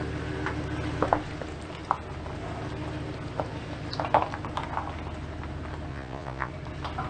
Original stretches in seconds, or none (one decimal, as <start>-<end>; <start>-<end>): 0.0-5.9; 6.5-7.1